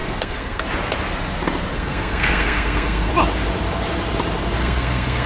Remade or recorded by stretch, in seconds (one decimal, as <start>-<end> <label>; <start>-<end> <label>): 0.0-0.6 remade; 0.6-1.7 recorded; 1.7-3.1 remade; 3.1-4.6 recorded; 4.6-5.3 remade